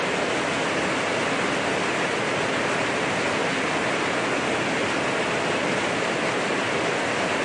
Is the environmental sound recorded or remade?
recorded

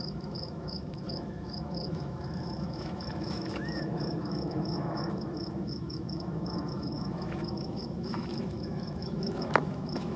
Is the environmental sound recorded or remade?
remade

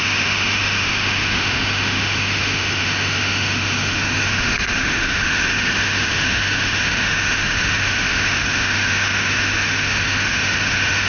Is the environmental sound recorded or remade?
remade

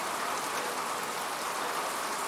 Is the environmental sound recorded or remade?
recorded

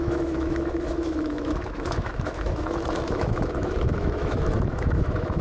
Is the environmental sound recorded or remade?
remade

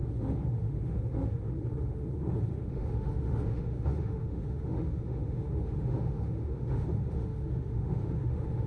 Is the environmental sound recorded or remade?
remade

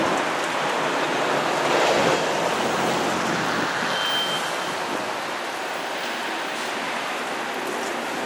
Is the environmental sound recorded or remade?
recorded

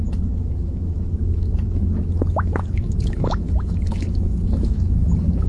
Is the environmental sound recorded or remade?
remade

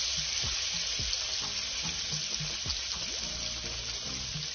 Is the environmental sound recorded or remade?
recorded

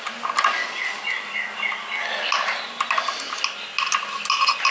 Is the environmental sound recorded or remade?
recorded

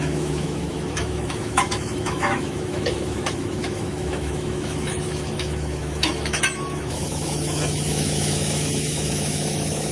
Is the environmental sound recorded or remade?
remade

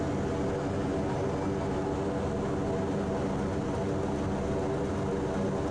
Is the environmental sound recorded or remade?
recorded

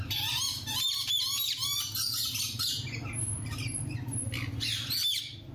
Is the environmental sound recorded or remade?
recorded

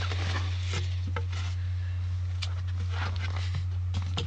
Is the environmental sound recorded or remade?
recorded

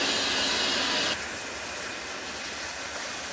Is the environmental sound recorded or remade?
recorded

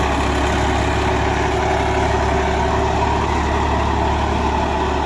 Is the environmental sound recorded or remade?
recorded